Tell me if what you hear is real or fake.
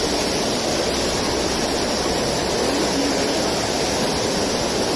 real